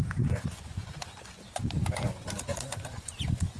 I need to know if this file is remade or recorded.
remade